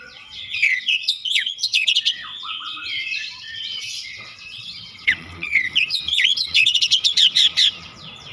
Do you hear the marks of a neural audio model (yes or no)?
yes